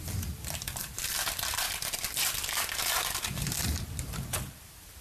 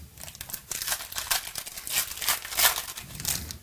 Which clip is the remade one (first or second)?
first